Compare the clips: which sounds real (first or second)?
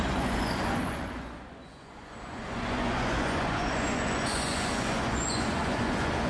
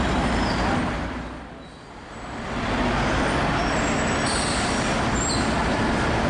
second